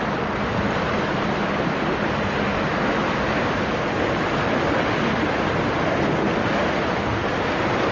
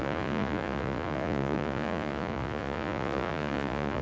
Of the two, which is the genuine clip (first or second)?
first